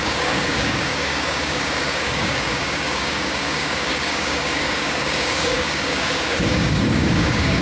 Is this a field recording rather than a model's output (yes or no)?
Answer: no